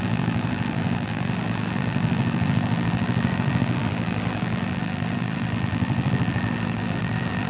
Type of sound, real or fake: fake